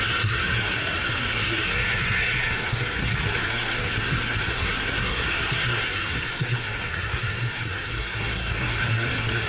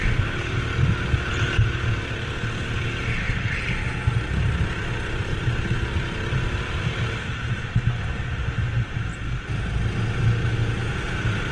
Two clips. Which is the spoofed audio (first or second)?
first